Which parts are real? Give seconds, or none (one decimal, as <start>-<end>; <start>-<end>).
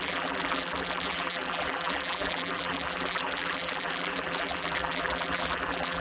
none